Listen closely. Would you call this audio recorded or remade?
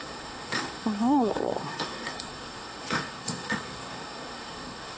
remade